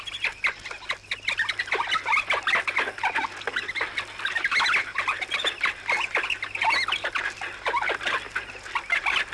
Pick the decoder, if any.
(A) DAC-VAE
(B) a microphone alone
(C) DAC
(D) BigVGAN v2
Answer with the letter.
B